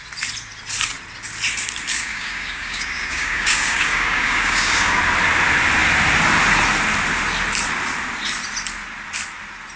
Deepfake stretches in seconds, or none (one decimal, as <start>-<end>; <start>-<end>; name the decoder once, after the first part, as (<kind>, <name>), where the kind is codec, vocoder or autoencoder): 1.9-5.0 (codec, DAC)